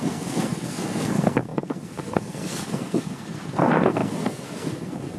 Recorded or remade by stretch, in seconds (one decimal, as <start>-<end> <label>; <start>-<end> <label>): 0.0-5.2 remade